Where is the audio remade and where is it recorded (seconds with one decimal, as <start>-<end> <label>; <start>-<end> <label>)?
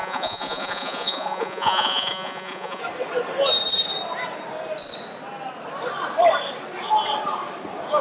0.0-2.8 remade; 2.8-8.0 recorded